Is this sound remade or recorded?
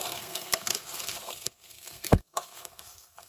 remade